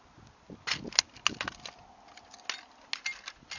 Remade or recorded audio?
recorded